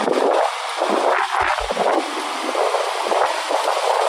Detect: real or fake real